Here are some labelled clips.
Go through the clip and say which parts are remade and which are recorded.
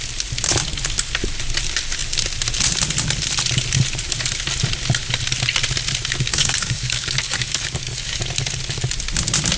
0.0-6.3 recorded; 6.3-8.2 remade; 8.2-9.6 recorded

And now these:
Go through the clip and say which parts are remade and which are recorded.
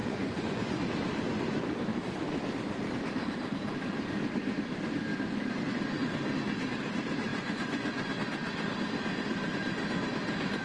0.0-0.8 remade; 0.8-7.3 recorded; 7.3-8.2 remade; 8.2-10.6 recorded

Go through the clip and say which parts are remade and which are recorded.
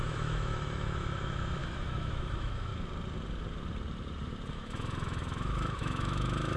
0.0-2.7 remade; 2.7-4.5 recorded; 4.5-6.6 remade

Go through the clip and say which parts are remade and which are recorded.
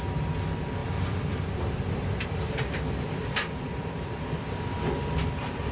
0.0-0.8 recorded; 0.8-4.2 remade; 4.2-5.7 recorded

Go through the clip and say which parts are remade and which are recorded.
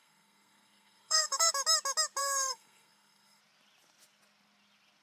0.0-1.5 remade; 1.5-2.2 recorded; 2.2-3.4 remade; 3.4-5.0 recorded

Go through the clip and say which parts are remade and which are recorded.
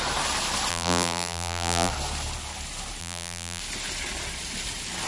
0.0-0.7 recorded; 0.7-1.9 remade; 1.9-3.0 recorded; 3.0-3.6 remade; 3.6-5.1 recorded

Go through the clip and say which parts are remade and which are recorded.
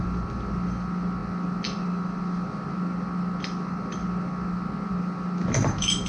0.0-6.1 recorded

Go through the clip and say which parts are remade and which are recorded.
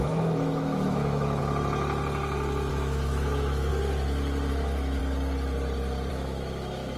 0.0-1.4 remade; 1.4-2.7 recorded; 2.7-3.7 remade; 3.7-4.5 recorded; 4.5-5.0 remade; 5.0-6.1 recorded; 6.1-7.0 remade